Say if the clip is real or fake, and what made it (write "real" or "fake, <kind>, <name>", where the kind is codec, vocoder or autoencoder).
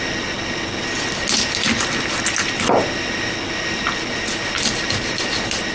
real